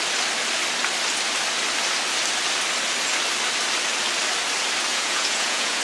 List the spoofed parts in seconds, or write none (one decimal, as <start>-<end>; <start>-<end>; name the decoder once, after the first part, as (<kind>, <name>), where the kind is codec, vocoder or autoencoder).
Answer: 4.9-5.8 (vocoder, Vocos)